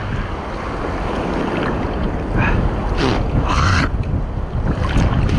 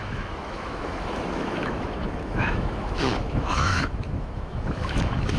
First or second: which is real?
first